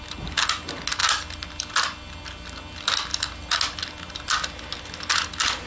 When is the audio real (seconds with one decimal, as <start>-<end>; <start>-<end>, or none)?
0.0-5.7